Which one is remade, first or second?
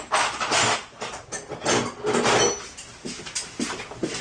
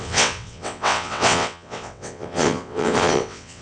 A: second